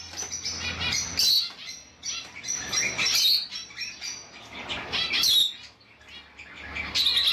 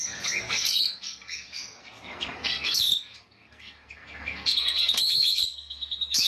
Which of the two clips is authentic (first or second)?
first